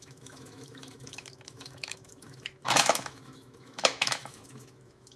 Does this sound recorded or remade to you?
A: remade